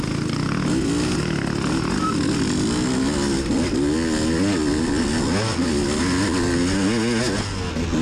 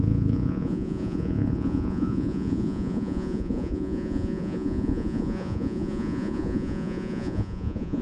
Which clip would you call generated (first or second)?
second